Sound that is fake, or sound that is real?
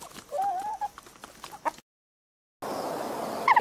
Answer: real